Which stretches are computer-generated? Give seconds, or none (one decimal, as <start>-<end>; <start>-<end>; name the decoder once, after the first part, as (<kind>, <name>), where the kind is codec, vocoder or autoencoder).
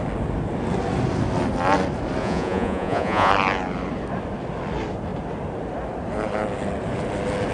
2.2-3.3 (vocoder, Vocos)